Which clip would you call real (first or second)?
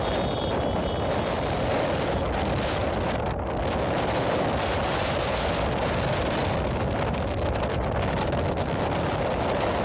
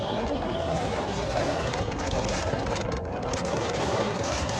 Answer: first